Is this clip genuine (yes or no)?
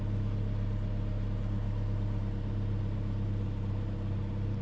yes